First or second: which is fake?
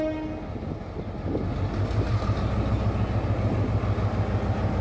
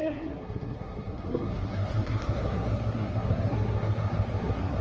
second